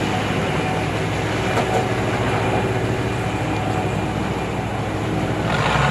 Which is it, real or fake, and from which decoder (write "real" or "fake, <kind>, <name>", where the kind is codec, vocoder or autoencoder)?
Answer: real